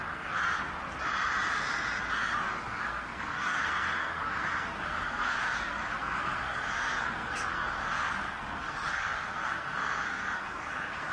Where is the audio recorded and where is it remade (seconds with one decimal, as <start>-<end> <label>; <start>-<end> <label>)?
0.0-0.4 remade; 0.4-2.6 recorded; 2.6-11.1 remade